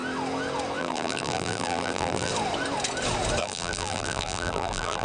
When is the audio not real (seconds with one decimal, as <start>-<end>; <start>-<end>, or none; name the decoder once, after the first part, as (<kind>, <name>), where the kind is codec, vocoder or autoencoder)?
0.8-2.3 (vocoder, BigVGAN v2); 3.4-5.0